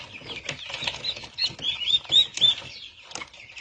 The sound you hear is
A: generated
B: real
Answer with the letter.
B